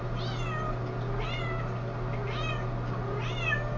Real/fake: real